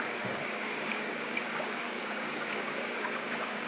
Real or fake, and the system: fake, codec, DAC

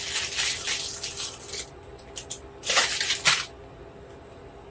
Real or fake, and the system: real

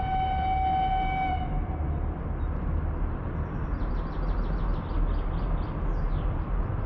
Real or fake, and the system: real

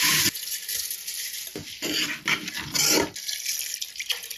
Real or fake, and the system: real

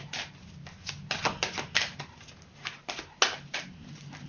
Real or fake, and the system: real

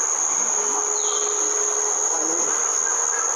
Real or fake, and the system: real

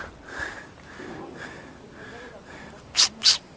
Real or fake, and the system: real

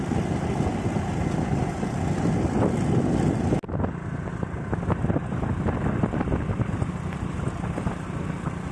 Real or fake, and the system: real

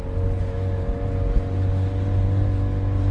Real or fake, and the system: real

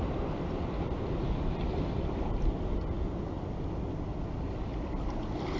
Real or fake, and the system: real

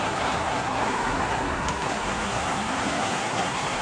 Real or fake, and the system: fake, codec, SNAC